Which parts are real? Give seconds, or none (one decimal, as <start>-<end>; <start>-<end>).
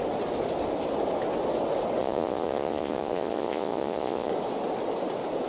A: 0.0-2.0; 4.3-5.5